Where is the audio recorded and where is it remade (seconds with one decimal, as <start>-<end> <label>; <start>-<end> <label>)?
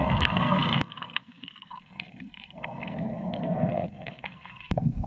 0.0-5.1 remade